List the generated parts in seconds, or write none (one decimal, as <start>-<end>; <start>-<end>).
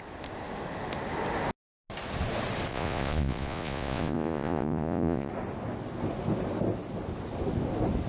2.7-5.3